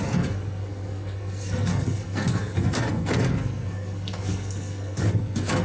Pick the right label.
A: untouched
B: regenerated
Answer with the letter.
B